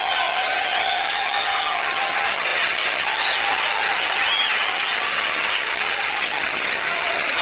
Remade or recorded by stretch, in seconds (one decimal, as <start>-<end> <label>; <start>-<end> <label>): 0.0-7.4 remade